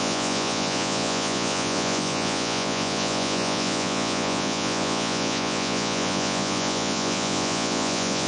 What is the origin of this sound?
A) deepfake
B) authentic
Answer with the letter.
A